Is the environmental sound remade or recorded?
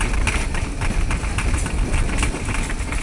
recorded